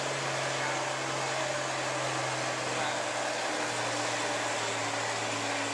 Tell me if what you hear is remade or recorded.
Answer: recorded